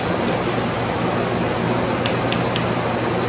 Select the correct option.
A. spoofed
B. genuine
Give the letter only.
B